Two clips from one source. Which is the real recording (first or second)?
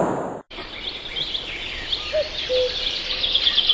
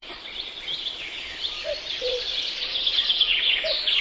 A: first